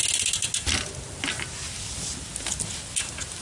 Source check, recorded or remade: recorded